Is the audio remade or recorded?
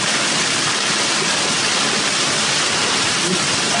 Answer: recorded